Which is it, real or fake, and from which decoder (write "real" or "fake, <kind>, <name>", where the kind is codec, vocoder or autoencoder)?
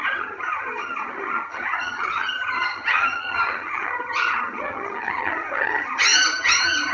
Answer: fake, vocoder, HiFi-GAN